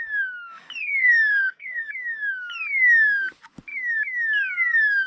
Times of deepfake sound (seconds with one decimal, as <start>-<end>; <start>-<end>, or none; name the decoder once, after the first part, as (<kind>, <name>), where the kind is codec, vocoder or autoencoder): 0.8-1.9 (codec, SNAC)